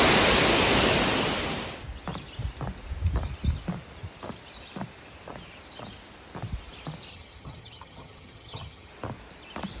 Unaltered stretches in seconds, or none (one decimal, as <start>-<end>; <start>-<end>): 0.0-7.1; 8.9-9.8